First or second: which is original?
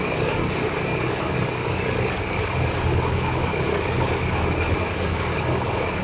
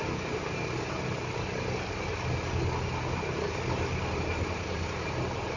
second